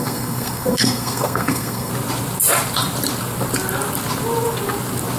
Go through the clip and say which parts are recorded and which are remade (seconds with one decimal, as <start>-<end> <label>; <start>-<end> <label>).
0.0-1.9 remade; 1.9-5.2 recorded